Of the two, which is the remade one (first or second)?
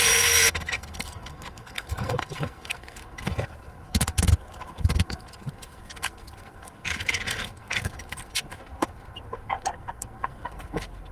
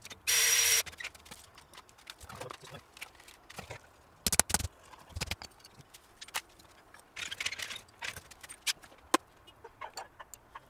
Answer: first